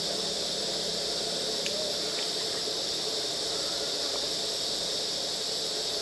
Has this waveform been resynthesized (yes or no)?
no